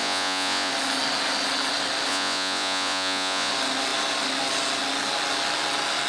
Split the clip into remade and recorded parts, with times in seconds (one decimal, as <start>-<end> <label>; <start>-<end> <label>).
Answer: 0.0-0.7 remade; 0.7-2.1 recorded; 2.1-3.5 remade; 3.5-6.1 recorded